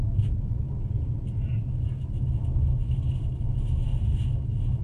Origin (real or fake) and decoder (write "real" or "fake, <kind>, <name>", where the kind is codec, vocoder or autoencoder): real